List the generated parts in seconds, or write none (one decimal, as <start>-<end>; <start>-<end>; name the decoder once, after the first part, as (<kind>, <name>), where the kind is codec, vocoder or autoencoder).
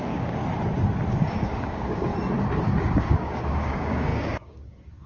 0.0-0.4 (codec, DAC); 1.1-2.1; 2.8-5.1